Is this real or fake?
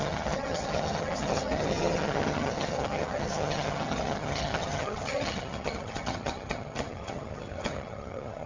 fake